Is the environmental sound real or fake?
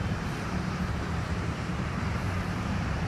fake